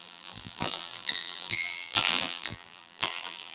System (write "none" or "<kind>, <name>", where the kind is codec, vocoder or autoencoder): vocoder, BigVGAN v2